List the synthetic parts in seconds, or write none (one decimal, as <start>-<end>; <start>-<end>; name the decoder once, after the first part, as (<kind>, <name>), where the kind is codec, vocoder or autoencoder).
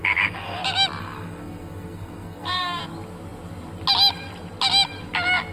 0.0-0.6 (codec, SNAC); 1.0-2.8